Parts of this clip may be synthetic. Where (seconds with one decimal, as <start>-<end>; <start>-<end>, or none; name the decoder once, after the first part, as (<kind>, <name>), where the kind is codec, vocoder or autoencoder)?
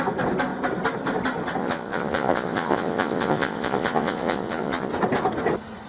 1.6-4.9 (vocoder, Vocos)